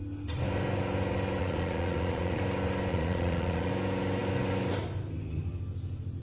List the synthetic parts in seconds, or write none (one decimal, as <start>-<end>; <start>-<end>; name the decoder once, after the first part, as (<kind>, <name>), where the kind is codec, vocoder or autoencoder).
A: 1.4-2.4 (vocoder, Vocos); 2.9-3.7